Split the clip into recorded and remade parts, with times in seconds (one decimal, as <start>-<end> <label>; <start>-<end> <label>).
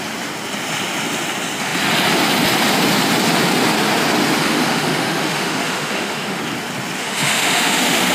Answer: 0.0-4.4 recorded; 4.4-6.4 remade; 6.4-7.0 recorded; 7.0-8.1 remade